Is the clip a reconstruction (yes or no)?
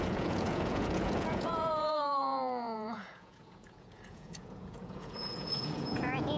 yes